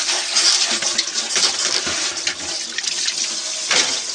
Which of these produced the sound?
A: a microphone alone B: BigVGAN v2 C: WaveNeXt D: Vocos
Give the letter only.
A